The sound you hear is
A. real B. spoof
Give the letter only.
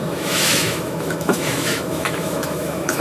B